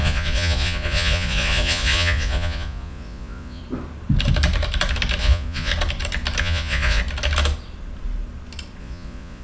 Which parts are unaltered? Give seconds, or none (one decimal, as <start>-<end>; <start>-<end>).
3.6-5.2; 5.7-6.4; 7.0-8.8